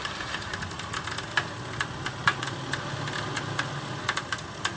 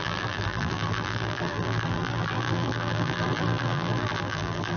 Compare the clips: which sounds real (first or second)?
first